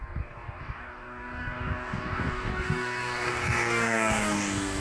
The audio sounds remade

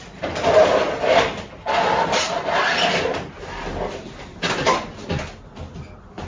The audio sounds recorded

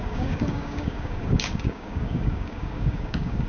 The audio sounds remade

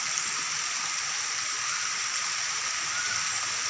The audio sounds recorded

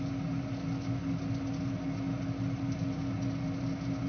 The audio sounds recorded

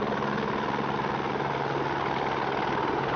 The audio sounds recorded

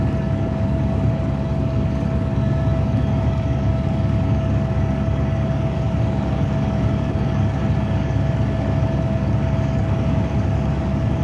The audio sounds remade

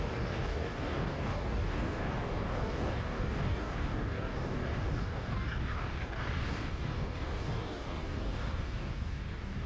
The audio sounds remade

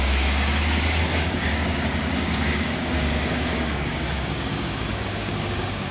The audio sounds remade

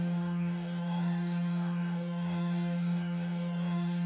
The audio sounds remade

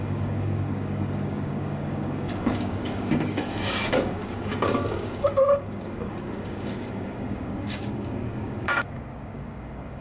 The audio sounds remade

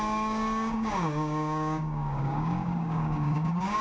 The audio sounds remade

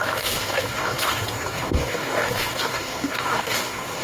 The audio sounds remade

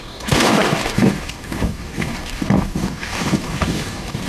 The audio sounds remade